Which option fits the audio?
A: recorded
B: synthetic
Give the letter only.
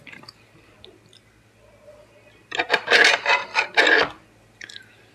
A